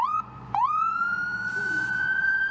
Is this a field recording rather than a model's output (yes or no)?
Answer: no